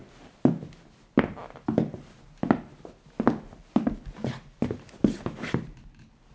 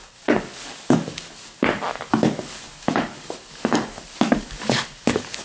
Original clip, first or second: first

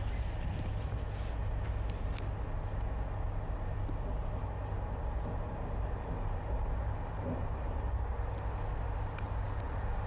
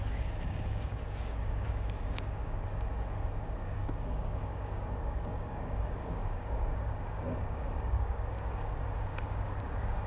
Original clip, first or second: first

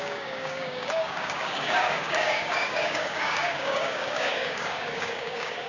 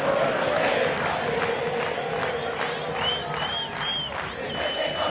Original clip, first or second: second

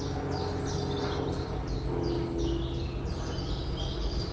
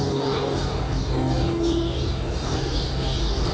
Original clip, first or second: first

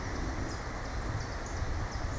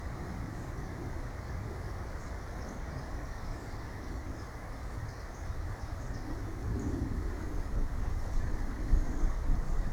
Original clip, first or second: first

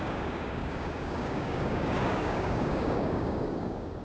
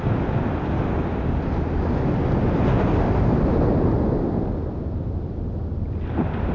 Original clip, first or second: second